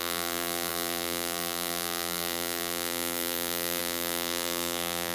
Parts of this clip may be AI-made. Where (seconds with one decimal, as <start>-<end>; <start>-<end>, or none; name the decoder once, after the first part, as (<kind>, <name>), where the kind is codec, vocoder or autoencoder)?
0.0-5.1 (vocoder, BigVGAN v2)